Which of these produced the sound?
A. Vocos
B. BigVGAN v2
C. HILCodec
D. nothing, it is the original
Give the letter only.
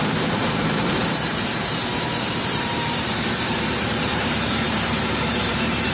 B